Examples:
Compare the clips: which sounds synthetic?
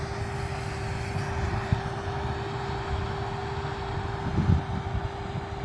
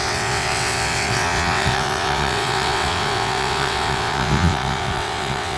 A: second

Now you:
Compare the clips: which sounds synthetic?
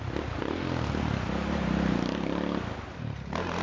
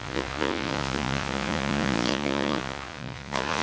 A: second